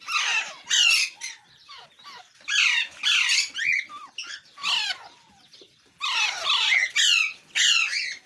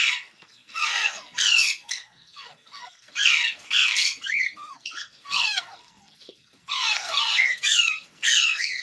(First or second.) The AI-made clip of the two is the second